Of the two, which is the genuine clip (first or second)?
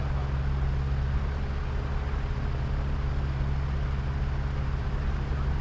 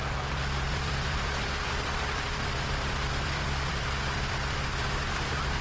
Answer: first